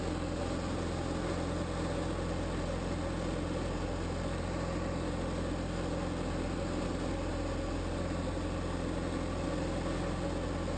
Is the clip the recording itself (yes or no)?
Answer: yes